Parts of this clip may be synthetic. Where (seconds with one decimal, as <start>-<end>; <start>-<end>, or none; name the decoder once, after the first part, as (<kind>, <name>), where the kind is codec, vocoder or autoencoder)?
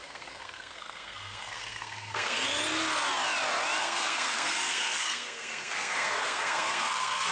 0.0-2.4 (codec, SNAC); 3.8-7.3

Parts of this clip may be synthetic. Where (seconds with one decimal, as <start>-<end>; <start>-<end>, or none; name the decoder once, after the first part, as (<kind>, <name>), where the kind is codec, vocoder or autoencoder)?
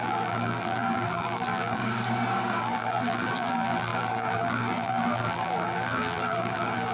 0.0-1.8 (vocoder, BigVGAN v2); 2.6-6.9